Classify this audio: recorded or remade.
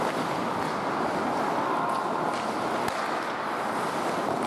recorded